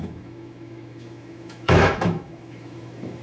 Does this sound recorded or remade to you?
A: remade